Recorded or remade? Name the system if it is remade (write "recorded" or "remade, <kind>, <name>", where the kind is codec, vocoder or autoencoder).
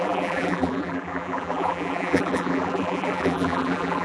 remade, vocoder, BigVGAN v2